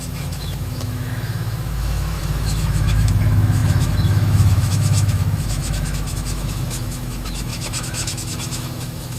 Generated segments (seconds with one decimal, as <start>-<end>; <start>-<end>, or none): 0.0-9.2